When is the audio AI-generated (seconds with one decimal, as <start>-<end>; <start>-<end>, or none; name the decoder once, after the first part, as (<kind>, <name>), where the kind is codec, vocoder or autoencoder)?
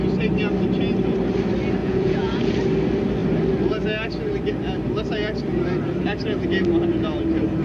1.8-2.5 (vocoder, Vocos)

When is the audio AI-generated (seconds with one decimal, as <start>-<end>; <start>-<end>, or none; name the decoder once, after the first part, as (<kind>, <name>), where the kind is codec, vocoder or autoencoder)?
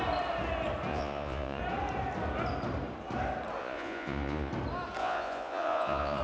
0.9-1.6 (vocoder, Vocos); 3.6-4.5; 5.0-6.2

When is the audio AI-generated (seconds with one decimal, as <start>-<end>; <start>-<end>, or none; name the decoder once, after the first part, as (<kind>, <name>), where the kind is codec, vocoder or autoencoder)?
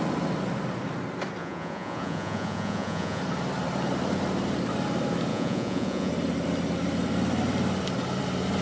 1.4-3.2 (vocoder, Vocos); 5.3-6.1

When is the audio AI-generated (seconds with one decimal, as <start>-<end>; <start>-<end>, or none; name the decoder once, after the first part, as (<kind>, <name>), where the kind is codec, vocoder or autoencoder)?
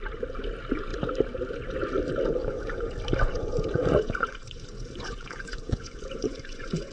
2.4-2.9 (vocoder, Vocos); 3.3-6.9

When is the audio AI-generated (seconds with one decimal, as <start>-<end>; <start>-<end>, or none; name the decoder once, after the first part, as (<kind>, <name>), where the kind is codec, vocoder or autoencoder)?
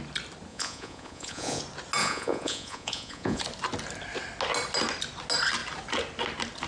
0.5-1.6 (vocoder, Vocos); 2.0-3.4